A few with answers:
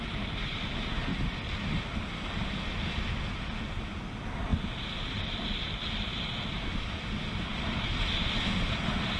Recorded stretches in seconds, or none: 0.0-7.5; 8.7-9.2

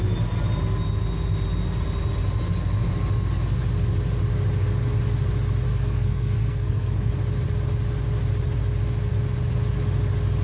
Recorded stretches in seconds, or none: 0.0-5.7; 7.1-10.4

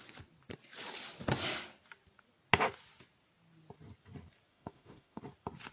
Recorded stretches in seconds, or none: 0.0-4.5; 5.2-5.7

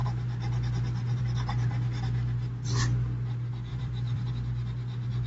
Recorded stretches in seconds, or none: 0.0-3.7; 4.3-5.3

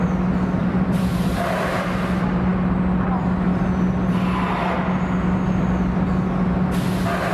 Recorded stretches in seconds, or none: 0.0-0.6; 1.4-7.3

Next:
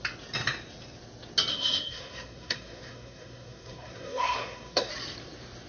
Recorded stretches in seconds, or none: 0.0-1.5; 4.9-5.7

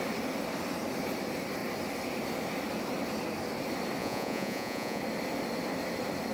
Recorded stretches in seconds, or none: 0.0-4.0; 5.0-6.3

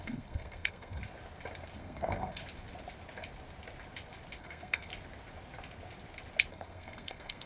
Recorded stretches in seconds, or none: 1.0-1.8; 2.4-4.4; 4.9-6.5